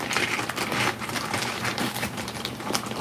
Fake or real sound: fake